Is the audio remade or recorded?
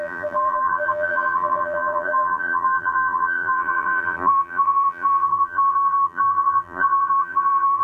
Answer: remade